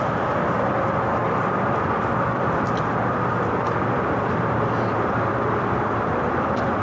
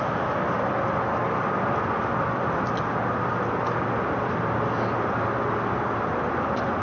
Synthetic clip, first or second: first